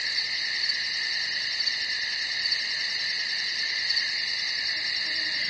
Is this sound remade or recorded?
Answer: recorded